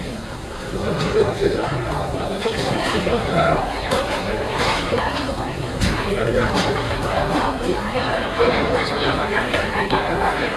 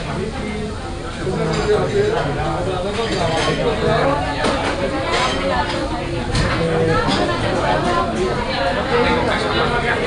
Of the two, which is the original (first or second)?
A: second